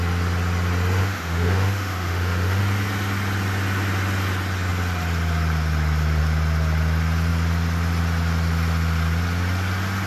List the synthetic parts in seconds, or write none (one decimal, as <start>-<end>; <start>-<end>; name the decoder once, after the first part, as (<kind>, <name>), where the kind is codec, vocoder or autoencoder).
1.0-2.6 (autoencoder, DAC-VAE)